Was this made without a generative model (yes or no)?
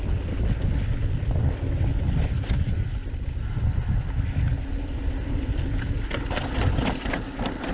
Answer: yes